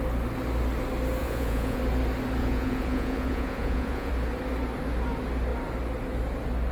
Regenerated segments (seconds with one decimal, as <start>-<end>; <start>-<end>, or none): 1.2-1.8; 2.4-4.1